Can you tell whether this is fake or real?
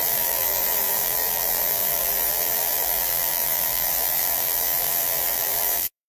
fake